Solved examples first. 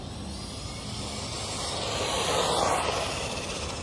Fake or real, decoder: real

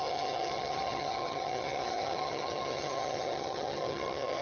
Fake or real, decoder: fake, vocoder, HiFi-GAN